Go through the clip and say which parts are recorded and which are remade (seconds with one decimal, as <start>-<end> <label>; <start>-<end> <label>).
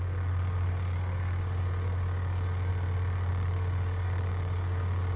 0.0-2.7 remade; 2.7-3.3 recorded; 3.3-5.2 remade